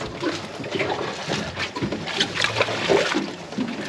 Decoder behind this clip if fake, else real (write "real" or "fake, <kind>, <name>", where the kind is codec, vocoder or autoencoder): real